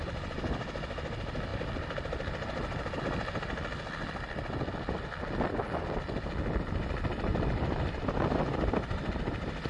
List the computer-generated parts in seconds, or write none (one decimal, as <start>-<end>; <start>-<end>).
1.5-3.0; 7.3-9.1